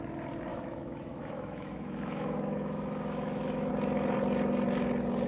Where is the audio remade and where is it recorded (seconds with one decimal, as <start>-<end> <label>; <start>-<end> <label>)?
0.0-0.5 recorded; 0.5-3.7 remade; 3.7-5.3 recorded